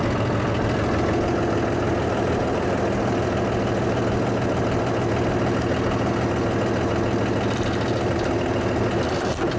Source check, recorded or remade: recorded